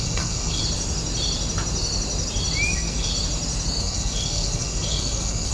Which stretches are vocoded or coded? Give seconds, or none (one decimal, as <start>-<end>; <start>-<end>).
0.0-0.6; 2.7-3.1; 3.8-5.5